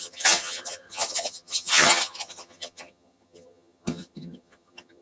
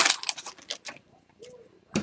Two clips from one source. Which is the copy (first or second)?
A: first